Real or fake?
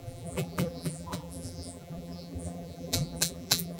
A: fake